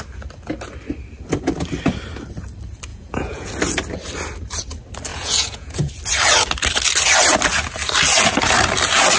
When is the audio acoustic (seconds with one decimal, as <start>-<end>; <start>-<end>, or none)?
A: 0.0-2.9; 3.5-5.1; 5.9-9.2